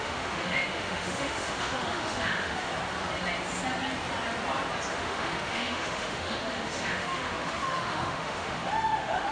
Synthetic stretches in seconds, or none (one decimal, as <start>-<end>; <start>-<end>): 0.0-2.7; 4.9-9.3